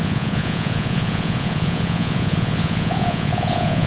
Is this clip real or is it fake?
fake